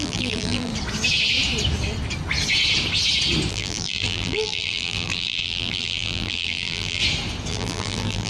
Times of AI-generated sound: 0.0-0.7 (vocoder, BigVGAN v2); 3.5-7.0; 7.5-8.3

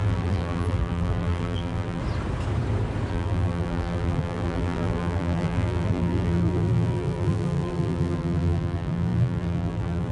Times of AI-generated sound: 0.0-2.0 (vocoder, BigVGAN v2); 3.1-10.1

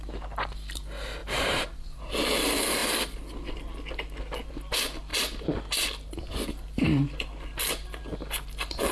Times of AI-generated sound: 1.2-2.0 (vocoder, BigVGAN v2)

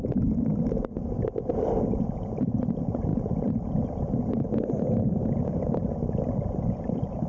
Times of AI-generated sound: 0.0-0.5 (vocoder, BigVGAN v2); 1.5-7.3

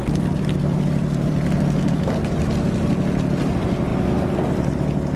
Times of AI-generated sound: 0.0-2.8 (vocoder, BigVGAN v2); 3.9-4.7

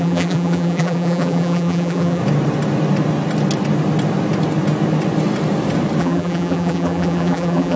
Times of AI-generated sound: 0.0-2.2 (vocoder, BigVGAN v2); 6.0-7.8

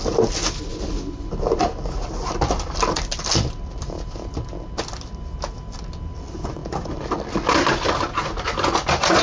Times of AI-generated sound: 6.6-7.7 (vocoder, BigVGAN v2)